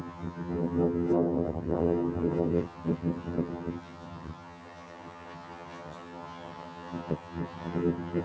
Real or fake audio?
fake